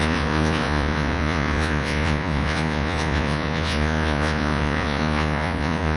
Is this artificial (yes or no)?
yes